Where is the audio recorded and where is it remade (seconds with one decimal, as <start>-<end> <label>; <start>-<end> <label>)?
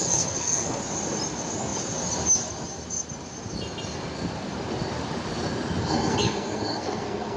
0.0-0.8 remade; 0.8-5.8 recorded; 5.8-7.4 remade